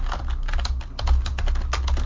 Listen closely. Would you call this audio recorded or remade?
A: recorded